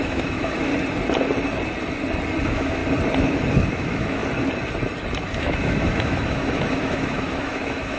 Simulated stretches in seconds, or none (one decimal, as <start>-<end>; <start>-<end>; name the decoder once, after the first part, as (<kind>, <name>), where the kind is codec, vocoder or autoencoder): 0.0-0.7 (autoencoder, DAC-VAE); 2.4-2.8; 3.7-4.2; 5.3-8.0